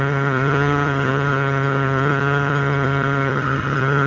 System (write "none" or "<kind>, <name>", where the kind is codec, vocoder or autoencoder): vocoder, HiFi-GAN